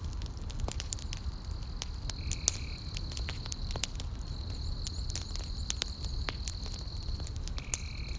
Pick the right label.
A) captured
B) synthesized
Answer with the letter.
A